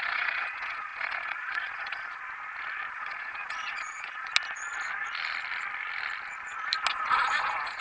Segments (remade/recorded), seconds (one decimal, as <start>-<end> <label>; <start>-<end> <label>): 0.0-2.2 remade; 2.2-2.9 recorded; 2.9-4.3 remade; 4.3-6.9 recorded; 6.9-7.8 remade